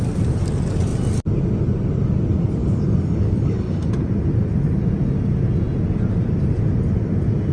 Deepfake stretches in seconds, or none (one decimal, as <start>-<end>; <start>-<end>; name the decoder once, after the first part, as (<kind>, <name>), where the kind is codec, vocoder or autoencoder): 2.6-3.9 (codec, DAC)